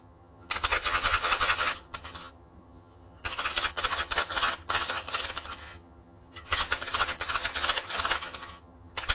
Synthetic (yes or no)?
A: yes